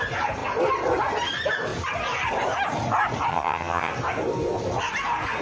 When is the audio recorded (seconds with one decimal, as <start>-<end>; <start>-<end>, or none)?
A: 0.0-3.3; 3.9-5.4